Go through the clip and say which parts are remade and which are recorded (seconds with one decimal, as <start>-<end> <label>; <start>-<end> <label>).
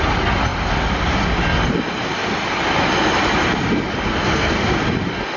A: 0.0-4.1 recorded; 4.1-4.6 remade; 4.6-5.4 recorded